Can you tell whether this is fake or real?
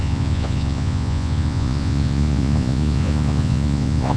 fake